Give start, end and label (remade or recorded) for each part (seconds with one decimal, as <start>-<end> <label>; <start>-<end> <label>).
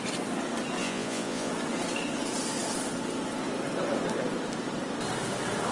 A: 0.0-0.8 recorded; 0.8-1.5 remade; 1.5-5.7 recorded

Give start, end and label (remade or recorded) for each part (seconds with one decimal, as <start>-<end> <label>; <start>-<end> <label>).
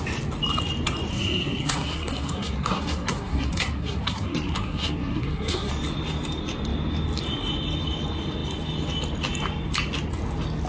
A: 0.0-1.1 recorded; 1.1-5.7 remade; 5.7-10.7 recorded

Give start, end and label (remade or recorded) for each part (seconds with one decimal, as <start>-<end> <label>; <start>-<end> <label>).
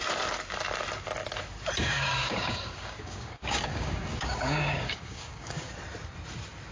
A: 0.0-1.8 recorded; 1.8-5.7 remade; 5.7-6.7 recorded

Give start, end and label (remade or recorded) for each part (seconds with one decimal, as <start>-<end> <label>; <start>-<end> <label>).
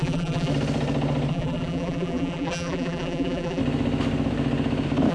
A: 0.0-0.5 remade; 0.5-1.3 recorded; 1.3-3.6 remade; 3.6-5.1 recorded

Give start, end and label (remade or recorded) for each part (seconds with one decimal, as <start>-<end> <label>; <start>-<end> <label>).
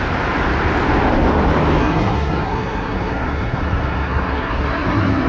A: 0.0-1.8 recorded; 1.8-5.3 remade